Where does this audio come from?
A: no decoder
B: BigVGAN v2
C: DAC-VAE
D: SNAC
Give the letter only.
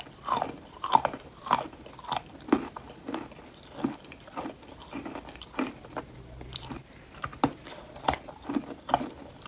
A